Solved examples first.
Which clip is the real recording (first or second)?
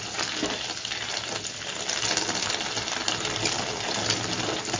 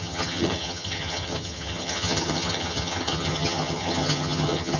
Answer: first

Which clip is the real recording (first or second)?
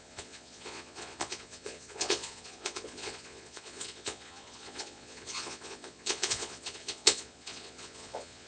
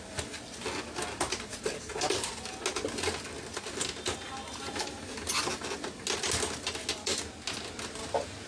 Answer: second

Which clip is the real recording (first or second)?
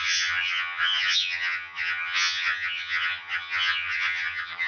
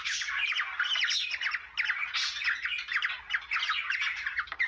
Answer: second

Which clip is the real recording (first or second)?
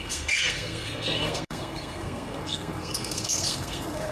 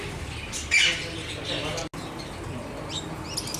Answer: second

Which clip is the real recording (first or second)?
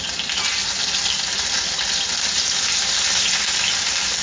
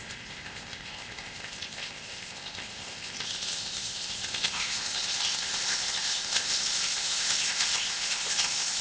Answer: first